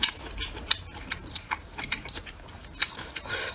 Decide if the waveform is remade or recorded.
remade